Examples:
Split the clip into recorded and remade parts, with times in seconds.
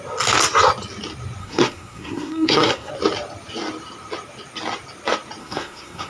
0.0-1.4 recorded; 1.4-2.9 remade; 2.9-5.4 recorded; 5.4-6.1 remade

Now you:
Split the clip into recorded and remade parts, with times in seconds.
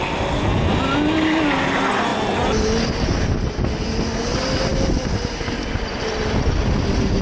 0.0-7.2 recorded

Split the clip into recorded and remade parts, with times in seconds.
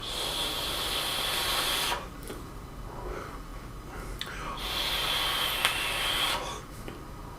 0.0-7.4 recorded